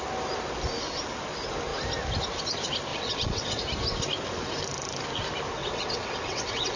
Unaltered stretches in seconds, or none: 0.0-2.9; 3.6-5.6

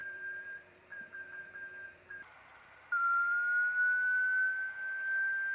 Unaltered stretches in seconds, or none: 3.3-5.5

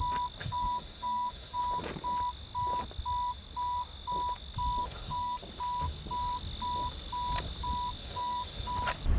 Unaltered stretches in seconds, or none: 0.0-0.4; 1.6-4.8; 5.4-8.0; 8.7-9.2